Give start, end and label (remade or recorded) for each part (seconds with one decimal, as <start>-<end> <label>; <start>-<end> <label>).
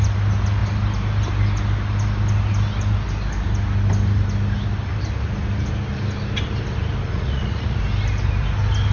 0.0-7.1 recorded; 7.1-7.8 remade; 7.8-8.9 recorded